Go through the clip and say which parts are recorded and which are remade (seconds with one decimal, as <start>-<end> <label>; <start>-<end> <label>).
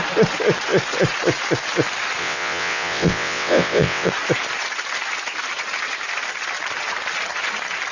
0.0-2.2 recorded; 2.2-4.1 remade; 4.1-7.9 recorded